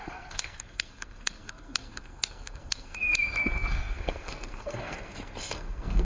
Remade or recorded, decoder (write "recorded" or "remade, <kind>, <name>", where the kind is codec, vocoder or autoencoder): remade, codec, SNAC